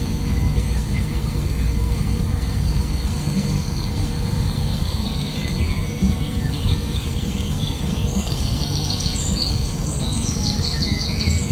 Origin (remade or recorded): remade